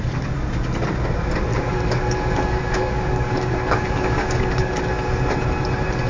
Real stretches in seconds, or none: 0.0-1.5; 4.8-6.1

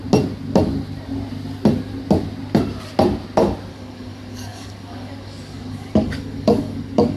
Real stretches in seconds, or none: 0.0-3.7